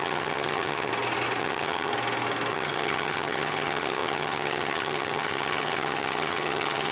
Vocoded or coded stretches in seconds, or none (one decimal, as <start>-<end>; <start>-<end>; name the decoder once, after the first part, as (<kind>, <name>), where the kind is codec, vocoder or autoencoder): 0.0-0.9 (vocoder, HiFi-GAN); 1.4-1.9; 2.5-6.9